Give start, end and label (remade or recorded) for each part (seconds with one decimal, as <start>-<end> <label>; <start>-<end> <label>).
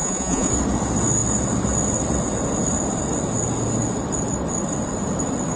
0.0-0.5 remade; 0.5-5.6 recorded